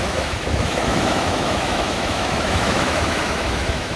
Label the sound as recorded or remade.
remade